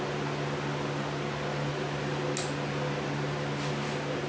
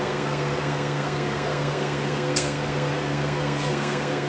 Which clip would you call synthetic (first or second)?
second